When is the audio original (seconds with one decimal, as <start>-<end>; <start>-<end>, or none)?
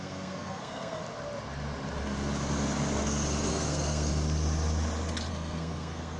1.0-3.5; 4.1-5.3